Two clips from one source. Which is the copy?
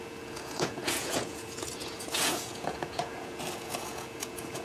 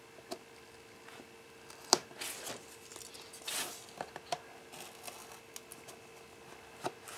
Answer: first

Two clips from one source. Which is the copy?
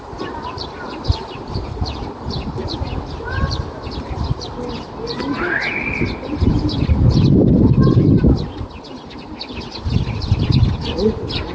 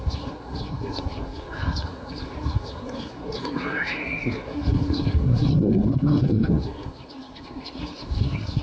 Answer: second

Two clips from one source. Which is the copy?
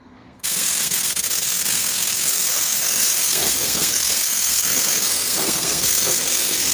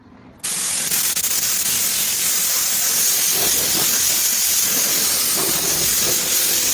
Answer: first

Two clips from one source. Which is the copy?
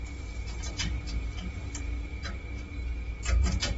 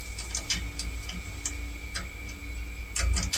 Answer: first